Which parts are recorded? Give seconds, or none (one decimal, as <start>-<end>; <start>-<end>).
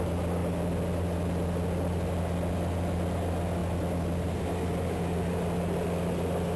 0.0-6.6